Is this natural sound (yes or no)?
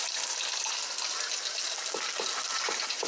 yes